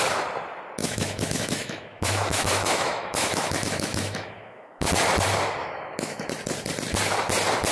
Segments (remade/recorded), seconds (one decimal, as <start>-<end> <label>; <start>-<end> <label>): 0.0-0.8 recorded; 0.8-4.9 remade; 4.9-5.6 recorded; 5.6-6.3 remade; 6.3-7.7 recorded